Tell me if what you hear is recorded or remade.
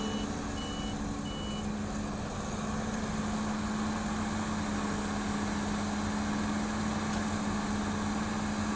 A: recorded